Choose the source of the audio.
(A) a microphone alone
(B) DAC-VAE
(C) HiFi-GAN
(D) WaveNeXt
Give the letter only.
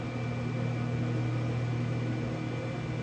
A